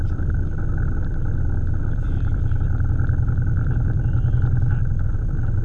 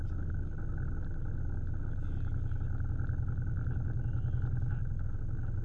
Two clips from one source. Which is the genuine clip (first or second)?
second